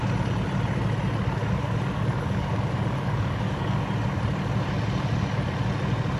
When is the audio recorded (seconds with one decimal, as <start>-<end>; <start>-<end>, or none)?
0.0-1.4; 3.8-6.2